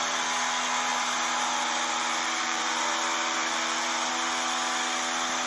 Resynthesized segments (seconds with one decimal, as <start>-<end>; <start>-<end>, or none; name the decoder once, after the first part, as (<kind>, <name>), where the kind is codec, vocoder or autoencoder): 0.9-4.1 (vocoder, BigVGAN v2)